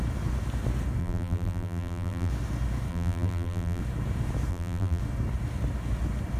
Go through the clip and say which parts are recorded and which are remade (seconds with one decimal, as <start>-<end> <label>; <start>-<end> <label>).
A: 0.0-1.0 recorded; 1.0-2.3 remade; 2.3-2.9 recorded; 2.9-3.8 remade; 3.8-4.5 recorded; 4.5-5.0 remade; 5.0-6.4 recorded